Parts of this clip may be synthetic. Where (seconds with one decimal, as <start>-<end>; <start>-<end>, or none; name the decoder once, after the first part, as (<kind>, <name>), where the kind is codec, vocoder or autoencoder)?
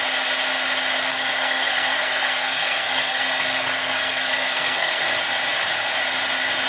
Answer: 1.1-5.1 (codec, SNAC)